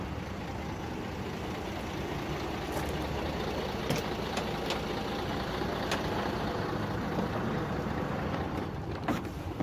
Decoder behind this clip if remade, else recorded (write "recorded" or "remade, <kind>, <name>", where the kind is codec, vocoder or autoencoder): recorded